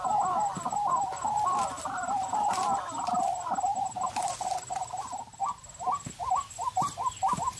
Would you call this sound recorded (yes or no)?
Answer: yes